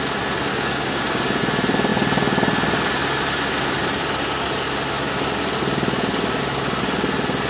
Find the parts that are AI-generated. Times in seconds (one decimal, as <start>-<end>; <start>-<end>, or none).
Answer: 0.5-1.4